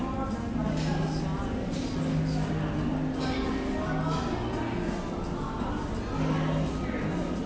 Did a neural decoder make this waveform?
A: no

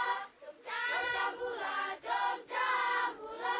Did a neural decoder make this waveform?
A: no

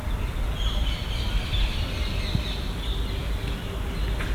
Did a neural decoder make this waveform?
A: no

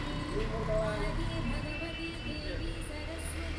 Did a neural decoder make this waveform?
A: no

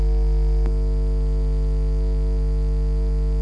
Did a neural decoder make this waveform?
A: no